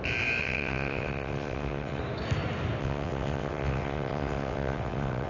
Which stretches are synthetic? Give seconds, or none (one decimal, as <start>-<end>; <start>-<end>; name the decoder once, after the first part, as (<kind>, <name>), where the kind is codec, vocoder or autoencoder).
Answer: 0.4-2.0 (vocoder, WaveNeXt); 2.8-5.3